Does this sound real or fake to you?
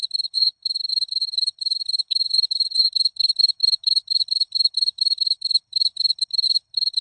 fake